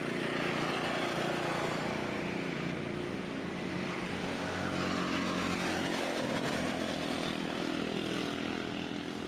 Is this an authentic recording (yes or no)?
yes